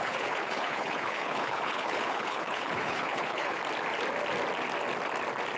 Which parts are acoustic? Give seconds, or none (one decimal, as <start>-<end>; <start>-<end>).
3.6-5.6